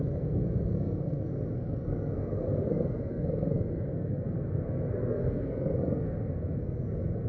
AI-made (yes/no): yes